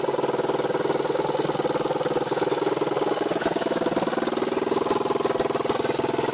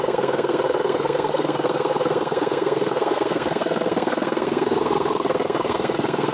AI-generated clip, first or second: second